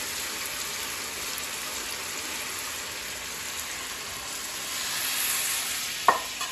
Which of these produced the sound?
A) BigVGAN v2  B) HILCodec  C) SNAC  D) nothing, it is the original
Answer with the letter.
D